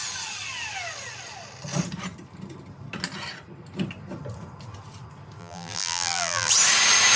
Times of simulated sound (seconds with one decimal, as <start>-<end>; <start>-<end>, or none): 5.4-6.5